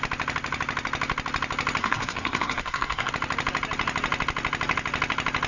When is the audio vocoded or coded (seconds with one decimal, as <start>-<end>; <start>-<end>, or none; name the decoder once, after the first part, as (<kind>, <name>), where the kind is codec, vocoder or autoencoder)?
1.8-3.1 (codec, SNAC)